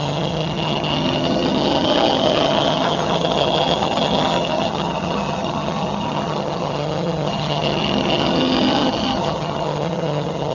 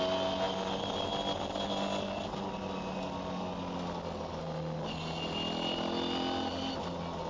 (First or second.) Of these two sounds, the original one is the second